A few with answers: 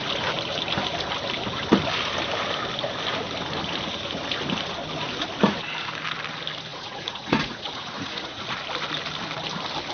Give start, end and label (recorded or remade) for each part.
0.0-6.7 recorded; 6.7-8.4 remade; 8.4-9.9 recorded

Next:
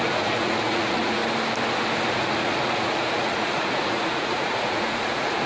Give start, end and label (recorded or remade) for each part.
0.0-1.2 remade; 1.2-2.1 recorded; 2.1-5.5 remade

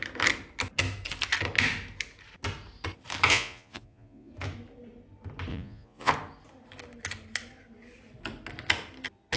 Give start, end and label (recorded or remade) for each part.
0.0-3.3 recorded; 3.3-4.3 remade; 4.3-5.5 recorded; 5.5-6.1 remade; 6.1-9.4 recorded

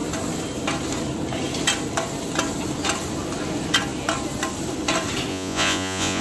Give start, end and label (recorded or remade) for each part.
0.0-5.3 recorded; 5.3-6.2 remade

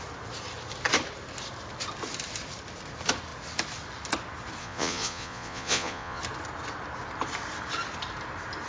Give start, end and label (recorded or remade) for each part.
0.0-4.6 recorded; 4.6-6.2 remade; 6.2-8.7 recorded

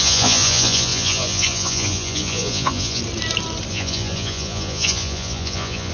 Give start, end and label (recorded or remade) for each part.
0.0-3.0 remade; 3.0-3.7 recorded; 3.7-5.9 remade

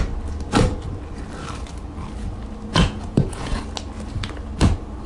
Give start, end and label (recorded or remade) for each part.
0.0-2.7 recorded; 2.7-3.6 remade; 3.6-5.1 recorded